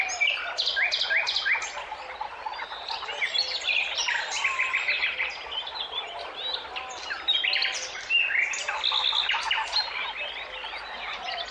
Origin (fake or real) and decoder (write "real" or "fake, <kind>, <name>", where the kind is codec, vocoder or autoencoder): real